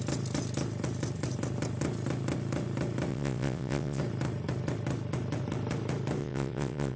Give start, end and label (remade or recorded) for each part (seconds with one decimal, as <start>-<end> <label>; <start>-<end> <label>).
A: 0.0-3.1 recorded; 3.1-4.0 remade; 4.0-6.2 recorded; 6.2-7.0 remade